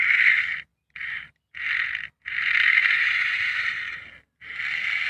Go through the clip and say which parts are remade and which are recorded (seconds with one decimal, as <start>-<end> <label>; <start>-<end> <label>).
0.0-2.8 recorded; 2.8-4.0 remade; 4.0-5.1 recorded